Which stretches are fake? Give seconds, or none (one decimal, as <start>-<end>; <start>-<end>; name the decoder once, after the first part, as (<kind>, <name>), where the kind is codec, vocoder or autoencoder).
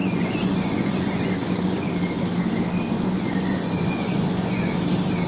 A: 0.0-1.9 (vocoder, Vocos); 2.9-4.7